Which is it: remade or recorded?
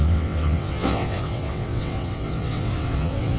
remade